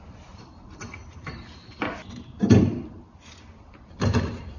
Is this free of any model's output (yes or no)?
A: yes